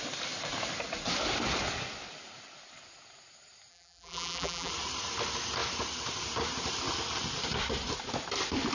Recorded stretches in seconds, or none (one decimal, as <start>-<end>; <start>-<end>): 0.0-3.7; 4.7-8.7